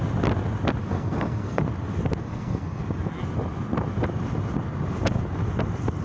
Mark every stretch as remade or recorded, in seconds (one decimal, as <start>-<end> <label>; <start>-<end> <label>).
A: 0.0-0.8 recorded; 0.8-1.6 remade; 1.6-2.2 recorded; 2.2-2.8 remade; 2.8-6.0 recorded